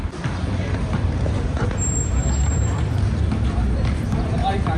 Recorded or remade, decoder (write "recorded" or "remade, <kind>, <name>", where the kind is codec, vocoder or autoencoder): remade, vocoder, BigVGAN v2